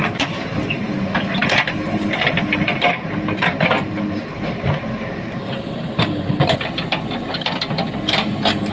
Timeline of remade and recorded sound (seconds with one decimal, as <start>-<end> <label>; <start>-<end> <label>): 0.0-8.7 recorded